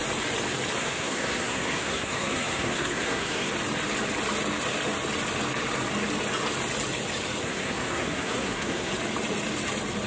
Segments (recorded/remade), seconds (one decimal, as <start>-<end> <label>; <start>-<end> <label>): 0.0-0.8 recorded; 0.8-3.5 remade; 3.5-7.4 recorded; 7.4-8.9 remade; 8.9-10.1 recorded